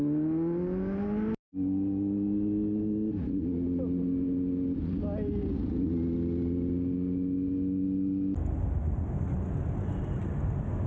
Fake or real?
real